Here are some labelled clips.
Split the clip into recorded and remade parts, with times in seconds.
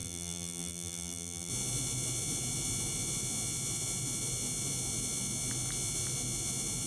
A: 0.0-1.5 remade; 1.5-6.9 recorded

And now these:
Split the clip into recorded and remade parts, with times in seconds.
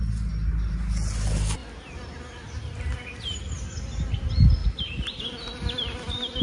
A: 0.0-6.4 recorded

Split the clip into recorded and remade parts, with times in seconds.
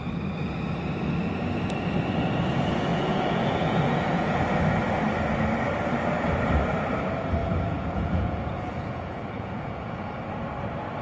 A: 0.0-2.9 recorded; 2.9-4.4 remade; 4.4-7.4 recorded; 7.4-10.1 remade; 10.1-11.0 recorded